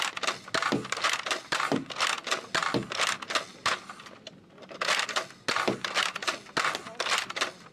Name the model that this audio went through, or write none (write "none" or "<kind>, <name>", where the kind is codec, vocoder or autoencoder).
none